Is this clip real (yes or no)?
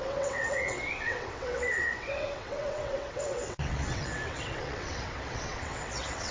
no